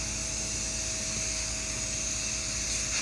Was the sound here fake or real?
real